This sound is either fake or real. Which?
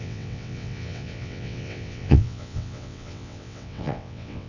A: fake